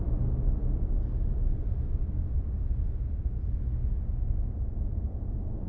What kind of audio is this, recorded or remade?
recorded